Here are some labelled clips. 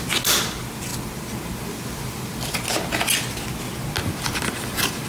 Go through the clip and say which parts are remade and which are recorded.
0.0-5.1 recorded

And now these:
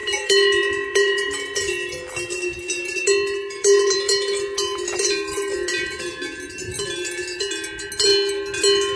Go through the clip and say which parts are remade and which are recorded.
0.0-5.1 remade; 5.1-9.0 recorded

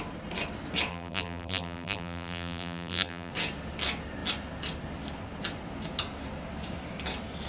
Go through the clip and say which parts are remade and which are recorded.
0.0-0.9 recorded; 0.9-3.3 remade; 3.3-7.5 recorded

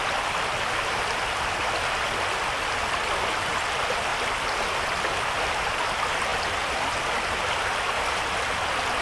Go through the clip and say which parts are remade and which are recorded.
0.0-9.0 recorded

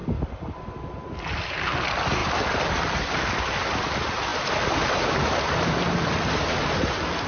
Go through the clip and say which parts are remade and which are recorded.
0.0-7.3 recorded